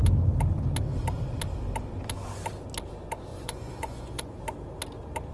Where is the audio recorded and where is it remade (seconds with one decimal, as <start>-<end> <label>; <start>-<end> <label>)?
0.0-3.3 recorded; 3.3-4.4 remade; 4.4-5.3 recorded